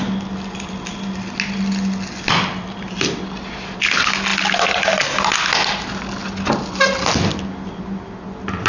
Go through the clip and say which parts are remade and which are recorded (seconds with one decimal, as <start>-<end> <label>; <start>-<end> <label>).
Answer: 0.0-8.7 recorded